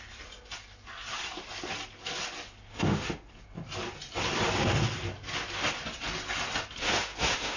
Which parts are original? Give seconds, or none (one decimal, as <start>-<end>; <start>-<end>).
0.0-2.7; 3.3-6.8